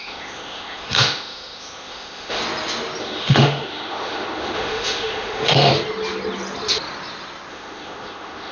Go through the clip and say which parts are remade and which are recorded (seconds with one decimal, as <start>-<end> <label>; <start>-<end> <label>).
0.0-2.4 remade; 2.4-3.0 recorded; 3.0-5.7 remade; 5.7-7.5 recorded; 7.5-8.5 remade